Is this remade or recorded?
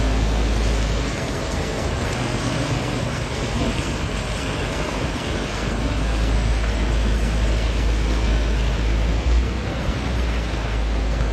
remade